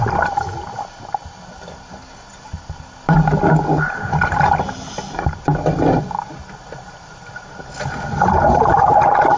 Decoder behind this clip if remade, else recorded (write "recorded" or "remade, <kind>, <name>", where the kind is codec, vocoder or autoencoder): recorded